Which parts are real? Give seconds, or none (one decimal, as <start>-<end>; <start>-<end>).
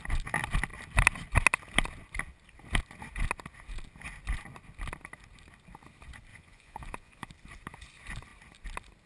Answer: 0.0-6.3; 7.3-9.1